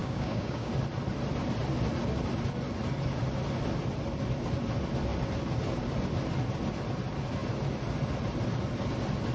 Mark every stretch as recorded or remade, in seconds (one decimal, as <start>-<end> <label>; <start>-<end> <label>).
0.0-0.7 remade; 0.7-9.3 recorded